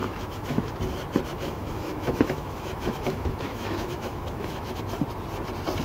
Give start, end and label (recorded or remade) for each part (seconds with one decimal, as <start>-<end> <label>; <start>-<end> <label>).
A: 0.0-0.7 remade; 0.7-1.3 recorded; 1.3-4.8 remade; 4.8-5.8 recorded